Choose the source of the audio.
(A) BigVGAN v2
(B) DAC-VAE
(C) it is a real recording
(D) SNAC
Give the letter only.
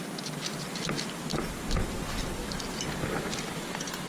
C